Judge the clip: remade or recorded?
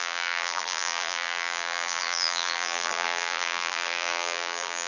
remade